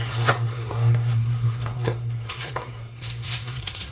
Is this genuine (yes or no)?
no